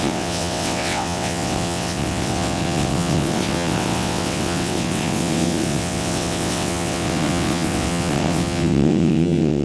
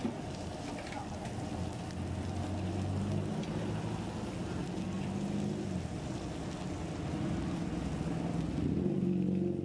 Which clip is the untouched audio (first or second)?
second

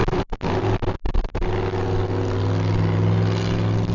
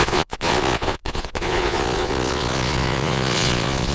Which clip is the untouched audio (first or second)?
first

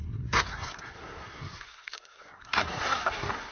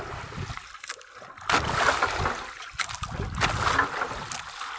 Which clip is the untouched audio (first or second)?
second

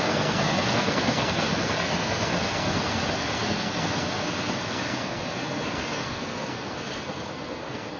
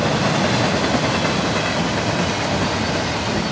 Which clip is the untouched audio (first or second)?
second